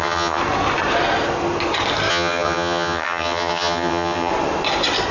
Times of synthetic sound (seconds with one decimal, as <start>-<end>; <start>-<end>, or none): 0.0-0.4; 2.1-4.3